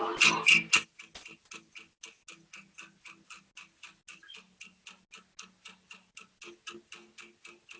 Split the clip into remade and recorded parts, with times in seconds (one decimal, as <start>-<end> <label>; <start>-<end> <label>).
0.0-7.8 recorded